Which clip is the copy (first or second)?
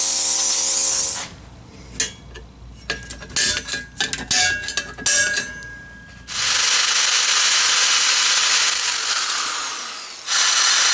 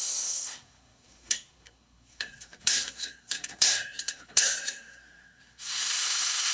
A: second